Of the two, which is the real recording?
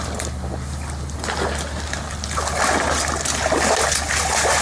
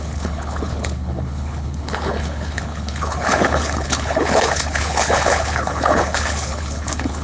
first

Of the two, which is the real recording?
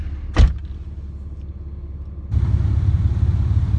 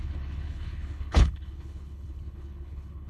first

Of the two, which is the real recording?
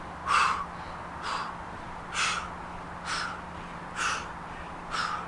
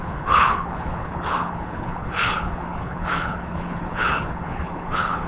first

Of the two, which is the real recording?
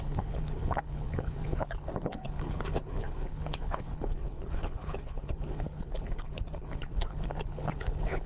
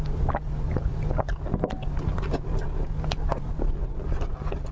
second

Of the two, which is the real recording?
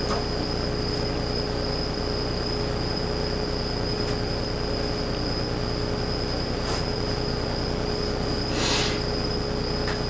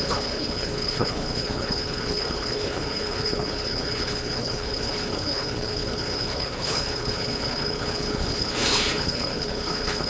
first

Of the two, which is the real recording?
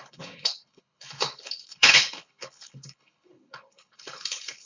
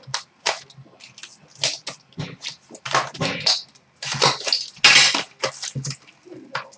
second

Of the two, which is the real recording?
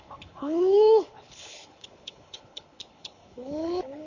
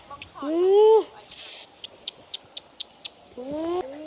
second